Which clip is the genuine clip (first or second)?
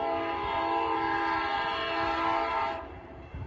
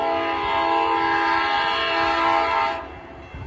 second